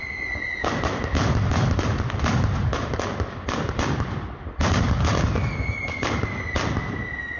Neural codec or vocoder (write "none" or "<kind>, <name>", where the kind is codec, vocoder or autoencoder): none